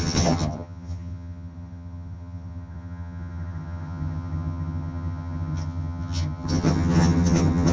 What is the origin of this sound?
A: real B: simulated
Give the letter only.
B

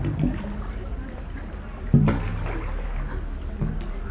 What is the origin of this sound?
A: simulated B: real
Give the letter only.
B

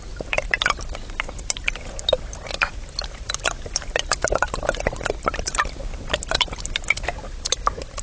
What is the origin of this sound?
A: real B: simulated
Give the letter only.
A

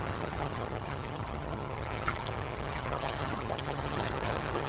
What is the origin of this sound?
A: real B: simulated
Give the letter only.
B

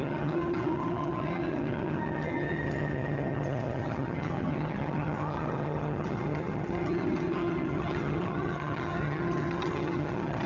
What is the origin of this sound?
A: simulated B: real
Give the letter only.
A